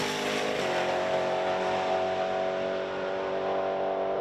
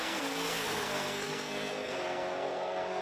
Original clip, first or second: first